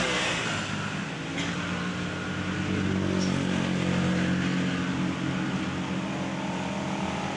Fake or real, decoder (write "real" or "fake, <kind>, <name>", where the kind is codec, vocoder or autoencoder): real